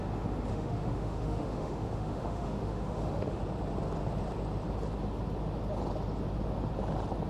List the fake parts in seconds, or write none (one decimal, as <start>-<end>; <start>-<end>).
0.5-3.4